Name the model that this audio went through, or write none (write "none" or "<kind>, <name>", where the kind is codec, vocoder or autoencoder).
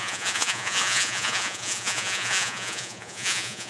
vocoder, Vocos